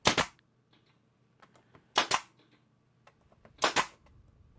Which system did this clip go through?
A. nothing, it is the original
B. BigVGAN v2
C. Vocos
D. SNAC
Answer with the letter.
A